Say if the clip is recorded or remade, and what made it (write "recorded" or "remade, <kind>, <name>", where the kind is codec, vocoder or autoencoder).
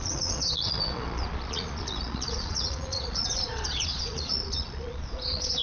remade, vocoder, Vocos